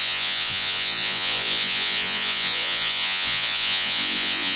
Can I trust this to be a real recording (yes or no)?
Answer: no